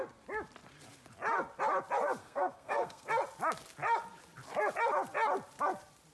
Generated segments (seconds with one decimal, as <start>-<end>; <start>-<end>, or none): 2.2-3.1